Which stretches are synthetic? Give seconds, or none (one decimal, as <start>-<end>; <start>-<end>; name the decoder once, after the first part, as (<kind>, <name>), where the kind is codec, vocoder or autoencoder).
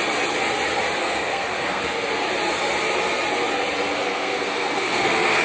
1.0-1.8 (codec, SNAC); 3.9-5.4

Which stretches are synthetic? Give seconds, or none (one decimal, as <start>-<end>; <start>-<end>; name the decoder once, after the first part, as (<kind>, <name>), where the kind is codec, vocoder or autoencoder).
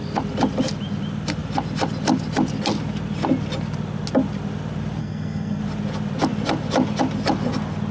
5.0-5.6 (codec, SNAC)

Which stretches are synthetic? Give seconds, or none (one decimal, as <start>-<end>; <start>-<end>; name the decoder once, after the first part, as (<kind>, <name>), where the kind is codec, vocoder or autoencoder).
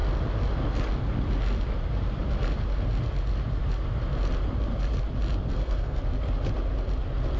5.5-6.0 (codec, SNAC)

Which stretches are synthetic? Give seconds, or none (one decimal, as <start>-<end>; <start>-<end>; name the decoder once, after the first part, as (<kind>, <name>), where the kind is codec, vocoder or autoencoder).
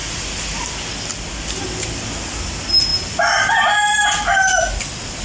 none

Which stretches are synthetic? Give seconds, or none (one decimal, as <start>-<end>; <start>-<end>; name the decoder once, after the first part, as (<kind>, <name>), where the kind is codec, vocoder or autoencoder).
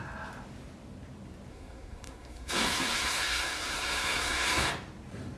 1.5-4.7 (codec, SNAC)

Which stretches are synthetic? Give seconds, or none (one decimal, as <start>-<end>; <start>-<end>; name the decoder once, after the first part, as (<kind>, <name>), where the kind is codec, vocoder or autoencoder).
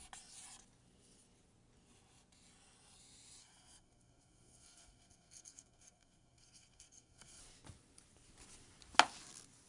3.4-7.4 (codec, SNAC)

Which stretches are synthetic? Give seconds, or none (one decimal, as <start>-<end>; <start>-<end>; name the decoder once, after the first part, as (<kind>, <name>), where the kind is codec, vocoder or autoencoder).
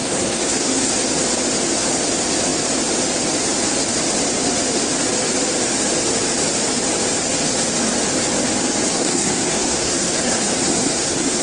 0.0-0.9 (codec, SNAC); 8.9-11.4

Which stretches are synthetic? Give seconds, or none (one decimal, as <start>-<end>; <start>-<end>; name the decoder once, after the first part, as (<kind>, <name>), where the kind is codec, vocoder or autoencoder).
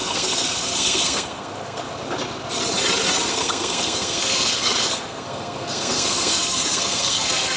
0.0-1.9 (codec, SNAC); 3.3-7.6